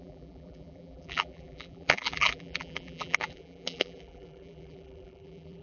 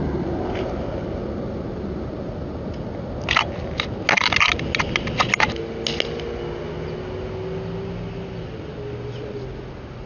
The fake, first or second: first